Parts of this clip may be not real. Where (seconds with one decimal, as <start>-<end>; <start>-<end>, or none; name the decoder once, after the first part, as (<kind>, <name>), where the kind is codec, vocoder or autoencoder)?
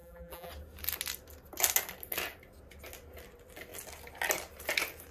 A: 0.0-0.5 (vocoder, BigVGAN v2)